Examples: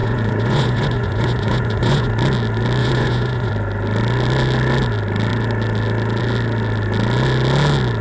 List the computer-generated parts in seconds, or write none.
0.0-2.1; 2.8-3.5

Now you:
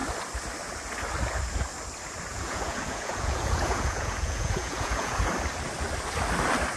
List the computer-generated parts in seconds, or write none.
2.3-5.3

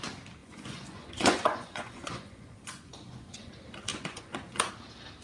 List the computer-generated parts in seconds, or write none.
0.4-3.5; 3.9-4.7

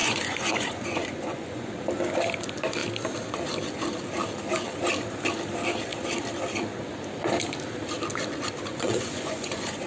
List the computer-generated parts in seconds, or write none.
0.0-1.7; 8.7-9.9

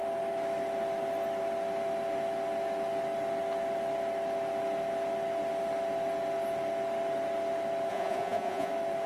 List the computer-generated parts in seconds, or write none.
7.9-8.7

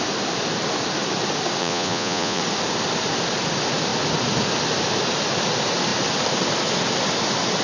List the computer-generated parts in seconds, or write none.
1.6-2.4